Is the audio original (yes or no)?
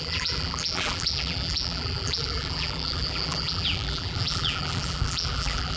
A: no